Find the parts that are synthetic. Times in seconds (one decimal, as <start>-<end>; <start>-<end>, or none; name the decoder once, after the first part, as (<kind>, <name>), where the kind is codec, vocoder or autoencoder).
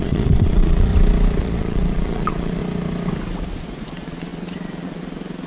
0.0-0.9 (vocoder, Vocos); 1.4-2.6; 3.6-5.5